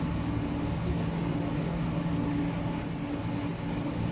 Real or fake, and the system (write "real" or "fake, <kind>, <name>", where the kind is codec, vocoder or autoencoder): real